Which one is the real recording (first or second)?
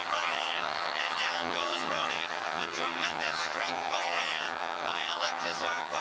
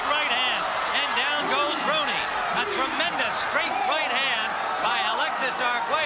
second